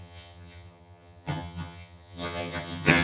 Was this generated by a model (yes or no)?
yes